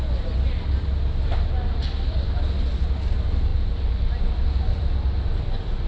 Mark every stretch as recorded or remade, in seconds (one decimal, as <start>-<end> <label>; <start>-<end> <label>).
0.0-5.9 recorded